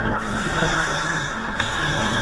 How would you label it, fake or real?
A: fake